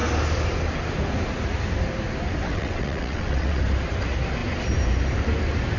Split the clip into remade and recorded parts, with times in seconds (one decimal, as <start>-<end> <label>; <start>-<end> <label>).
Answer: 0.0-2.5 recorded; 2.5-3.6 remade; 3.6-5.8 recorded